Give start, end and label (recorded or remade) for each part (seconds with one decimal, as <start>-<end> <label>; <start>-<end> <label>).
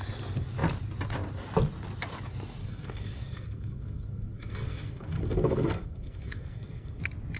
0.0-2.6 recorded; 2.6-7.0 remade; 7.0-7.4 recorded